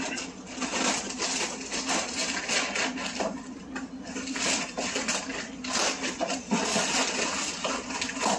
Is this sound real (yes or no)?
yes